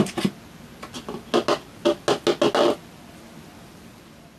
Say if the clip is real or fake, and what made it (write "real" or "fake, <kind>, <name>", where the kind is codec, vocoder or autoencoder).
real